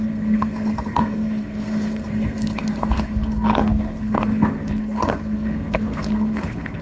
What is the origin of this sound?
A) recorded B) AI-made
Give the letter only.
B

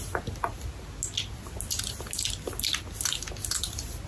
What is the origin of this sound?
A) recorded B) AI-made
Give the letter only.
A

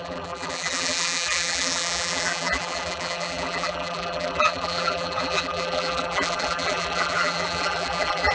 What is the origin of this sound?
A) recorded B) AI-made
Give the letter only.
B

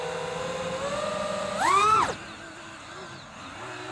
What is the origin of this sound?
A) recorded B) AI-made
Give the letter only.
A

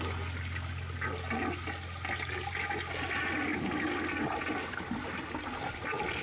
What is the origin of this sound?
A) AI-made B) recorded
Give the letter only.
B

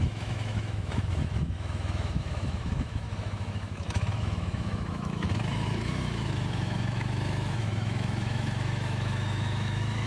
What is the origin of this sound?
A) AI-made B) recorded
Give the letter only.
A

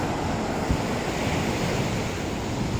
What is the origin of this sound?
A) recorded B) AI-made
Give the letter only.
A